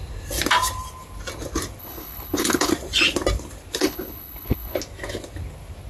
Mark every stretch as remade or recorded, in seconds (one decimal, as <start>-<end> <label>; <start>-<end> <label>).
0.0-1.8 recorded; 1.8-2.7 remade; 2.7-3.8 recorded; 3.8-4.8 remade; 4.8-5.9 recorded